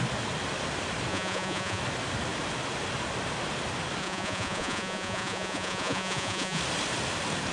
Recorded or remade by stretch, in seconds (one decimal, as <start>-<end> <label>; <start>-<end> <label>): 0.0-1.1 recorded; 1.1-1.8 remade; 1.8-4.0 recorded; 4.0-6.6 remade; 6.6-7.5 recorded